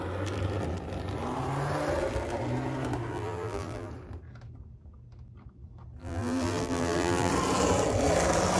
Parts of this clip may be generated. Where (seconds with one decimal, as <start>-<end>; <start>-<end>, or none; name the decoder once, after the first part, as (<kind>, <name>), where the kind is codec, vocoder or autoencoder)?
3.1-3.9 (vocoder, BigVGAN v2); 6.0-7.3